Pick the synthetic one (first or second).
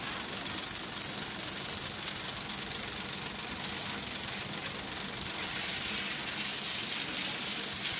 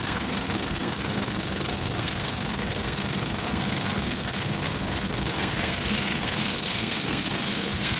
second